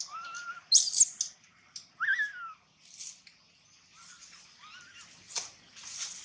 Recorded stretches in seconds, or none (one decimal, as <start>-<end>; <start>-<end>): 0.0-6.2